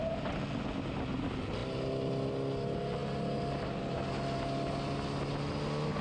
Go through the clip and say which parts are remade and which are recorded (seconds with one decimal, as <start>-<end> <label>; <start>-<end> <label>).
0.0-6.0 recorded